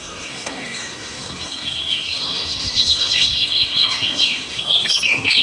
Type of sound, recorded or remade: remade